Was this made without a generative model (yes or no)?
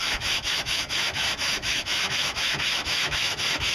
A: no